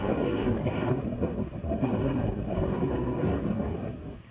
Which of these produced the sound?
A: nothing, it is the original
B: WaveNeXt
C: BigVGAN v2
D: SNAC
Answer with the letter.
D